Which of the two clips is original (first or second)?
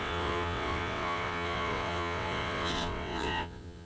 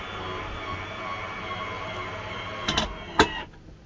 second